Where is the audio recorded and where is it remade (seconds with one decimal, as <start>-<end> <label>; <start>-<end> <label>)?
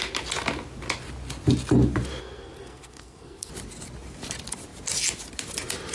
0.0-2.2 recorded; 2.2-3.5 remade; 3.5-5.9 recorded